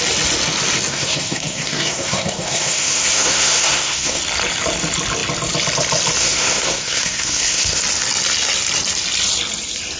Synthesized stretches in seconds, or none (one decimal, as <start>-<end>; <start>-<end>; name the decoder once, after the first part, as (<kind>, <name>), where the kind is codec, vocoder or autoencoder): 0.9-4.2 (codec, SNAC); 6.2-7.8

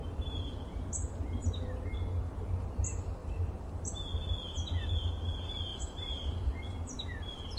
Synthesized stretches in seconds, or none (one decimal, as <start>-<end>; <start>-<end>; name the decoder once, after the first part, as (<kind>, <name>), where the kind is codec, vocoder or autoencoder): 3.2-3.8 (vocoder, BigVGAN v2); 5.7-6.8

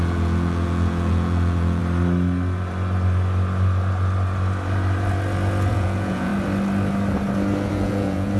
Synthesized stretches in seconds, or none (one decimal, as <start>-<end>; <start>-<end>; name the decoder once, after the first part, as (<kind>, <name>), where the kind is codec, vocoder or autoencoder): 0.0-1.8 (vocoder, Vocos); 5.7-6.3; 7.7-8.4

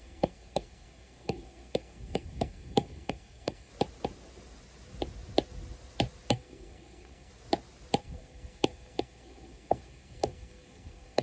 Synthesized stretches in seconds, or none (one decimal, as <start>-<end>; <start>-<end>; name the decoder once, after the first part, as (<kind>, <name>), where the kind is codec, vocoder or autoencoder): 0.0-3.7 (codec, SNAC); 6.3-7.3; 8.0-11.2

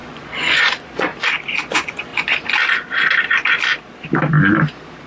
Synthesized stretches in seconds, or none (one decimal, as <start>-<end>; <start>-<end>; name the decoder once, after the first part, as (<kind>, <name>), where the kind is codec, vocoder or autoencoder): 0.0-1.1 (vocoder, Vocos); 1.6-2.1

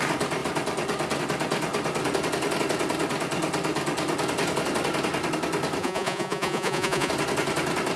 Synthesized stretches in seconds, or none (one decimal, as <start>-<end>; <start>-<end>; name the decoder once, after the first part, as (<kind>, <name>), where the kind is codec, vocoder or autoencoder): 5.8-7.1 (vocoder, Vocos)